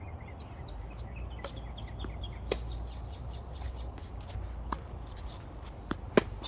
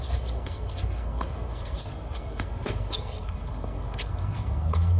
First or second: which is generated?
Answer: second